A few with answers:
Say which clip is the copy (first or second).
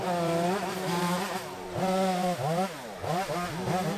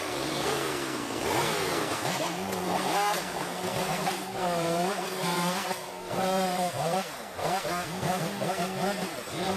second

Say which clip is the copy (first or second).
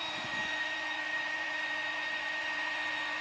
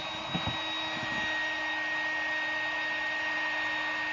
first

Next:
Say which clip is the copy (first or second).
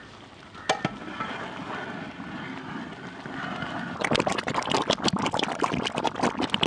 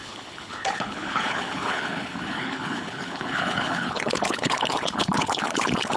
second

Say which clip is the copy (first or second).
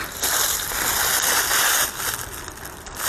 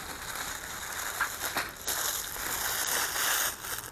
first